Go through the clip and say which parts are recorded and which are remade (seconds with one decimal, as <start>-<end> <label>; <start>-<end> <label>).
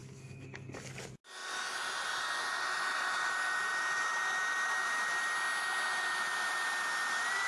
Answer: 0.0-0.9 remade; 0.9-7.5 recorded